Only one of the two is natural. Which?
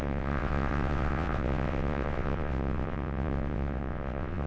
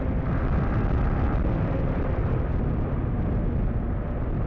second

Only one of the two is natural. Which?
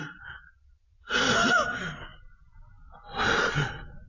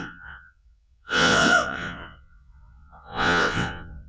first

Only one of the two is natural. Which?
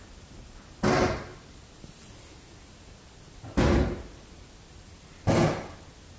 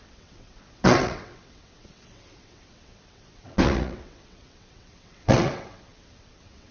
first